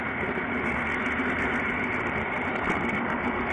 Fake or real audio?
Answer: real